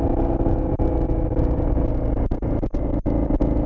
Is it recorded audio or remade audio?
recorded